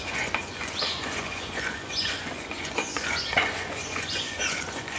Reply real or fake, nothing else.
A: fake